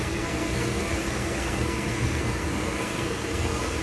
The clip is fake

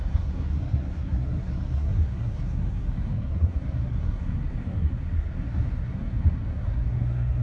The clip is fake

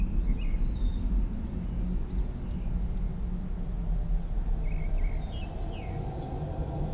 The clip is real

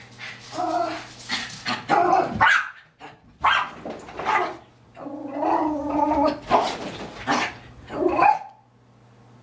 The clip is real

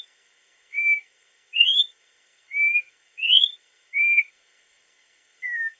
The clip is fake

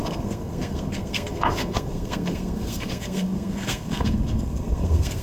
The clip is fake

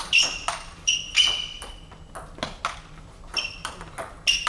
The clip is real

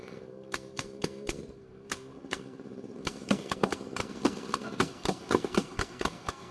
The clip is fake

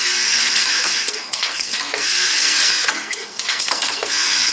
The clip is fake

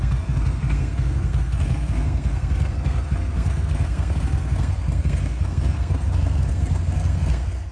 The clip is fake